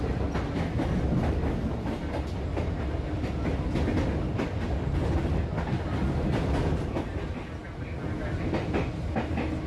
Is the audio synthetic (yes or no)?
no